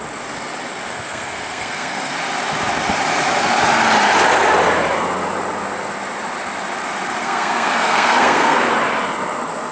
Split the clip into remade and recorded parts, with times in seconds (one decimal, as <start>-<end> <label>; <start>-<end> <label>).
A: 0.0-0.9 recorded; 0.9-2.1 remade; 2.1-7.2 recorded; 7.2-8.7 remade; 8.7-9.7 recorded